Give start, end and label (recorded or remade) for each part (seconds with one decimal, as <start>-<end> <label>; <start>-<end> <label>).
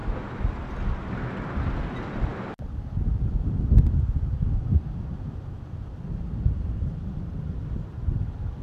0.0-8.6 recorded